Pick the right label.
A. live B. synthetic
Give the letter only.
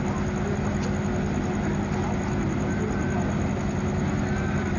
A